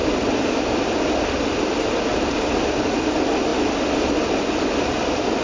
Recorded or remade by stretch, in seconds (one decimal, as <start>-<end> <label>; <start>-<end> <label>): 0.0-3.5 remade; 3.5-4.6 recorded; 4.6-5.4 remade